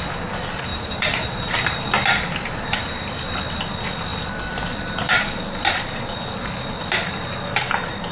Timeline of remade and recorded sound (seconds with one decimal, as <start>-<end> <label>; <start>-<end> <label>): 0.0-0.7 recorded; 0.7-1.6 remade; 1.6-8.1 recorded